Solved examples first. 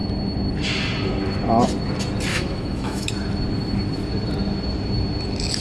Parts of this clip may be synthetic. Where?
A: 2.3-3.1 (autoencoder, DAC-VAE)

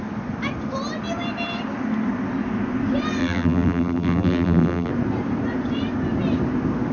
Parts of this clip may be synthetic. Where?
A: 3.2-4.9 (vocoder, BigVGAN v2)

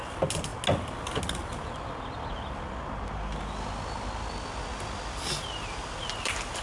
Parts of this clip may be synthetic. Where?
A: none

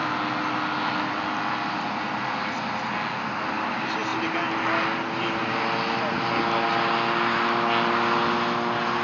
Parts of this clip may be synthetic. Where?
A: none

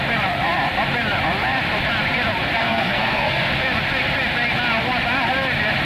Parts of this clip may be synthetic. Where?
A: 2.6-3.5 (codec, SNAC)

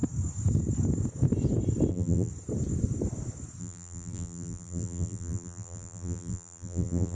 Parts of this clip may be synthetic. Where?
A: 1.9-2.3 (vocoder, BigVGAN v2); 3.6-7.1

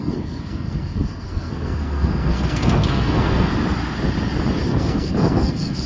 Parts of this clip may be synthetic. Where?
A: 0.0-3.5 (codec, SNAC); 4.7-5.9

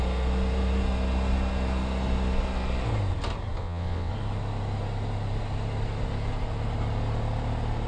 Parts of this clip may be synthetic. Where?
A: 3.6-4.1 (vocoder, WaveNeXt)